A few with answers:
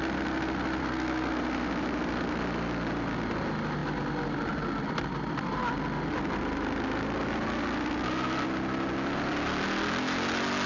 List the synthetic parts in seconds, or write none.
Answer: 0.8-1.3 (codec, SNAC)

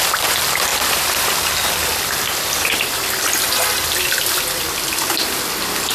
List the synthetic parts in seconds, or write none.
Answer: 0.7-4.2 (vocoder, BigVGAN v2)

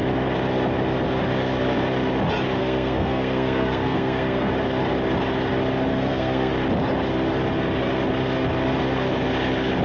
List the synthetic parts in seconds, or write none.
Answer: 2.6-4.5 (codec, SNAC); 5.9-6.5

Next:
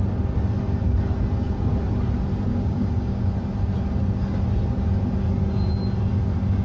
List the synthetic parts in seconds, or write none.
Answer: 2.5-3.3 (codec, DAC)

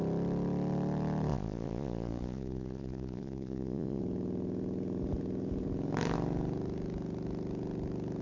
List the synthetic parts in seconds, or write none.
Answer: 1.3-4.0 (vocoder, Vocos)

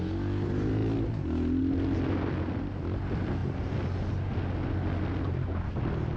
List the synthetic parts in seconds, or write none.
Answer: none

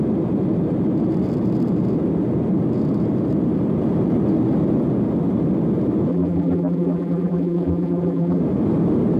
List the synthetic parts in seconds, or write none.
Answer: 6.1-8.4 (vocoder, BigVGAN v2)